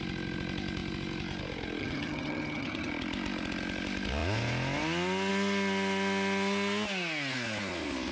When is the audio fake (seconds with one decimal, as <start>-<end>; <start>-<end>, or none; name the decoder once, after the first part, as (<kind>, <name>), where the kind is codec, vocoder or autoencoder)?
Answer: 1.8-2.9 (vocoder, HiFi-GAN)